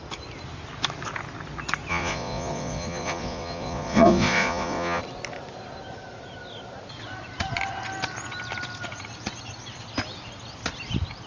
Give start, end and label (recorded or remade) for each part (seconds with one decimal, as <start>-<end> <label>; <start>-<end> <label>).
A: 0.0-1.9 recorded; 1.9-5.0 remade; 5.0-11.3 recorded